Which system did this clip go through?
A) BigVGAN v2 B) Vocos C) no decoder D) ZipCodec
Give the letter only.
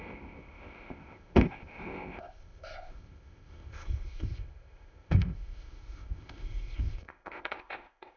D